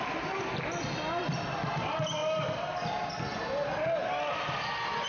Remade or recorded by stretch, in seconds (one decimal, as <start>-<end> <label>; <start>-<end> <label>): 0.0-5.1 recorded